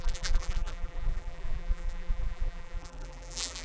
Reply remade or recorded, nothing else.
remade